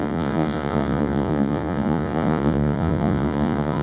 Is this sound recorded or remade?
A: remade